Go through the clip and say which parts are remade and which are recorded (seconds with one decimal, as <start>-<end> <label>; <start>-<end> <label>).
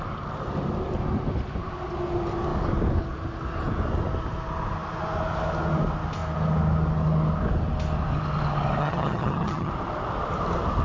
0.0-8.8 recorded; 8.8-9.7 remade; 9.7-10.8 recorded